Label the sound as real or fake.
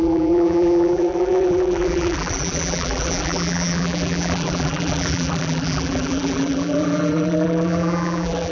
fake